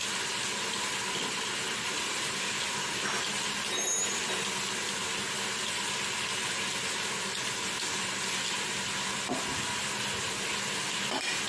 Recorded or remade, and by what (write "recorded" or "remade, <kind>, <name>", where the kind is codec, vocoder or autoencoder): recorded